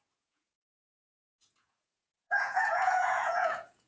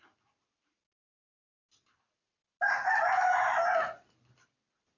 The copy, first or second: first